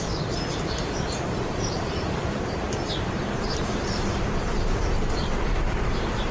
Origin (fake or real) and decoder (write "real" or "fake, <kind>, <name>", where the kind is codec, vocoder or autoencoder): fake, vocoder, BigVGAN v2